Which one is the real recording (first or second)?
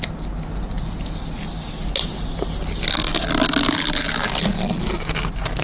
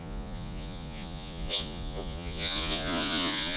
first